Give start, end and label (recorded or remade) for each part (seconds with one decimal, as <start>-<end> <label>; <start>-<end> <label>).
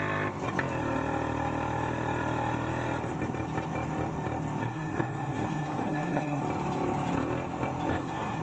0.0-4.6 recorded; 4.6-6.4 remade; 6.4-7.9 recorded; 7.9-8.4 remade